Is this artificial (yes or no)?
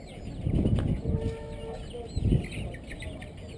no